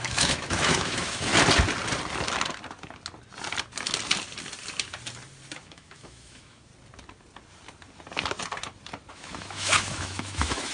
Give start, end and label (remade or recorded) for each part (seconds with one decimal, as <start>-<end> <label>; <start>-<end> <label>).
0.0-1.3 remade; 1.3-5.6 recorded; 5.6-6.7 remade; 6.7-9.1 recorded; 9.1-10.7 remade